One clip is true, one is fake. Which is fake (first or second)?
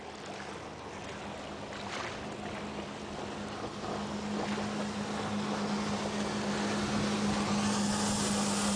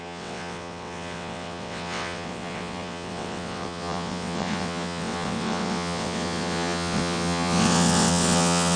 second